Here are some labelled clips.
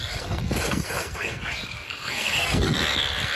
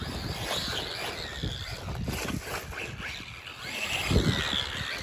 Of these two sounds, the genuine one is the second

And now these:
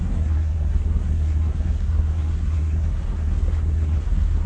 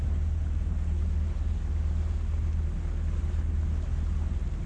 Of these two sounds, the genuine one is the second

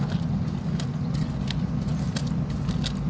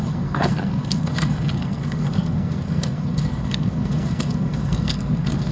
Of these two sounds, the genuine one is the first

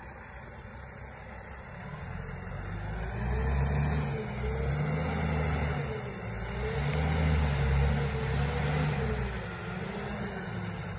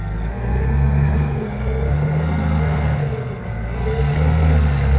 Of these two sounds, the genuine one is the first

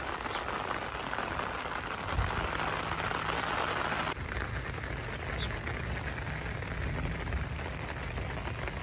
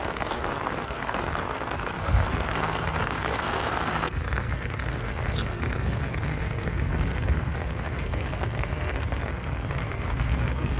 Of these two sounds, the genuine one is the first